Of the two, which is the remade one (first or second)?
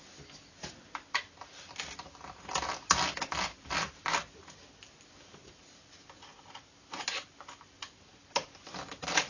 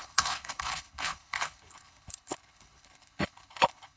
second